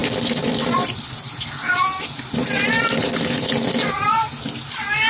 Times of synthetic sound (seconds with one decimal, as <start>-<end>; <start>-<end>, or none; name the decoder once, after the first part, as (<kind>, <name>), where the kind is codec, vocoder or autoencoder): none